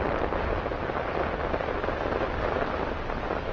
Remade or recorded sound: recorded